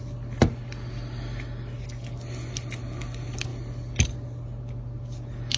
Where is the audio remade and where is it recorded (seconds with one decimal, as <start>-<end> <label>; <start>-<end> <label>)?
0.0-5.6 recorded

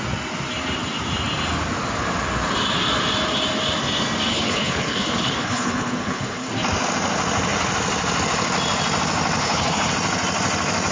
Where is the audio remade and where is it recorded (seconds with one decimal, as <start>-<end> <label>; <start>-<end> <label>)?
0.0-4.3 recorded; 4.3-6.5 remade; 6.5-9.4 recorded; 9.4-9.9 remade; 9.9-10.9 recorded

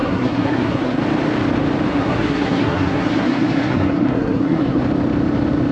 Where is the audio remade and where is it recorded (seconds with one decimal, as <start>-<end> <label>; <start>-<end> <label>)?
0.0-1.0 remade; 1.0-1.9 recorded; 1.9-4.8 remade; 4.8-5.7 recorded

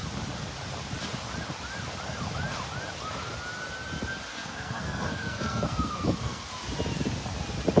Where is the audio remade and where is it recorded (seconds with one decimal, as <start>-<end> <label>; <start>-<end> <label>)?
0.0-4.3 recorded; 4.3-6.5 remade; 6.5-7.8 recorded